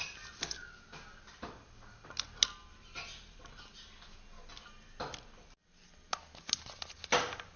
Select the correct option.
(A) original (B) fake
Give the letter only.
A